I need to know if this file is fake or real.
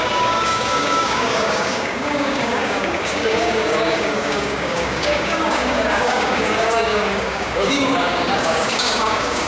fake